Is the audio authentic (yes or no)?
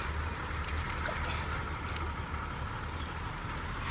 yes